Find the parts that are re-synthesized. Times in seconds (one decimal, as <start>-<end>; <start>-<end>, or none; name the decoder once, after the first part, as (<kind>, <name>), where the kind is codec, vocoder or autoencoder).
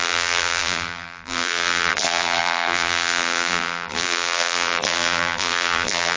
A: 0.0-6.2 (vocoder, BigVGAN v2)